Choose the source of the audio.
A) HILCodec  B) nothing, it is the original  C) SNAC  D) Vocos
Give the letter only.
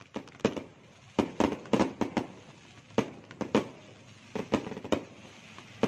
B